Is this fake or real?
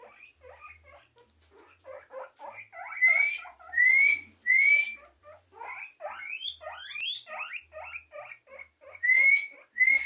real